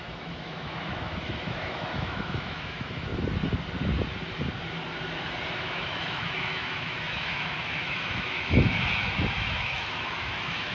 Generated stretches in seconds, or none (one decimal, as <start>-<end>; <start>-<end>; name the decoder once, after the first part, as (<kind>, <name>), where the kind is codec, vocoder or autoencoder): 0.0-3.1 (autoencoder, DAC-VAE); 5.6-10.7